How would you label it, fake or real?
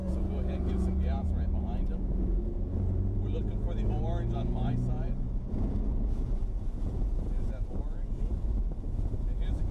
fake